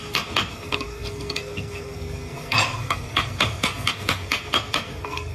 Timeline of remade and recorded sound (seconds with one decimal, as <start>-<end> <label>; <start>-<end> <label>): 0.0-5.3 remade